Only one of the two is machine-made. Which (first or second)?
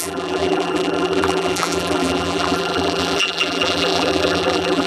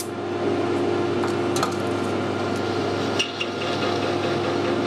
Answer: first